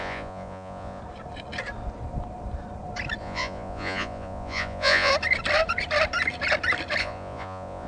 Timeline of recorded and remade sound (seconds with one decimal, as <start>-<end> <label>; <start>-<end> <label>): 0.0-1.0 remade; 1.0-3.2 recorded; 3.2-5.1 remade; 5.1-7.0 recorded; 7.0-7.9 remade